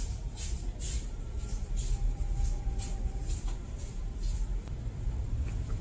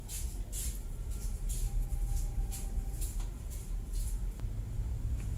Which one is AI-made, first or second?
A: first